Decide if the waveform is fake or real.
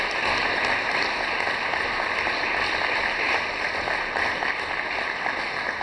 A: real